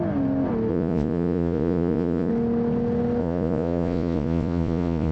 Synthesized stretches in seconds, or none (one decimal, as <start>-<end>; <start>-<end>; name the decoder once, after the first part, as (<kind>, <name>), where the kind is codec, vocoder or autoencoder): 0.7-2.3 (vocoder, Vocos); 3.2-5.1